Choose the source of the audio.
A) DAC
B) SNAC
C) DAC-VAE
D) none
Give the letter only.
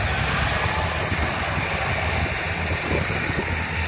D